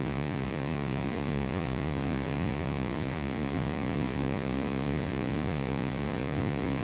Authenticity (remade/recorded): remade